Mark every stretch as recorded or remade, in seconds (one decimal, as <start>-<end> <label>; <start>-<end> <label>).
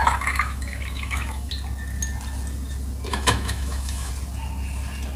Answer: 0.0-1.5 remade; 1.5-3.1 recorded; 3.1-4.1 remade; 4.1-5.2 recorded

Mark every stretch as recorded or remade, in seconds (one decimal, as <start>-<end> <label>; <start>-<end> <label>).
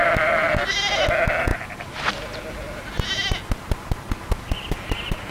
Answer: 0.0-1.5 recorded; 1.5-2.1 remade; 2.1-5.3 recorded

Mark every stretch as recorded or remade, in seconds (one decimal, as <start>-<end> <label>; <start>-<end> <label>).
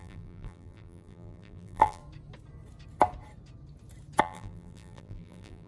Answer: 0.0-2.0 remade; 2.0-4.2 recorded; 4.2-5.7 remade